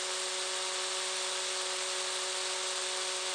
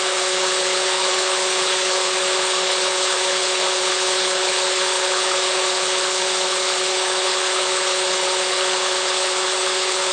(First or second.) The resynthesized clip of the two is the second